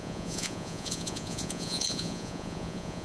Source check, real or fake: fake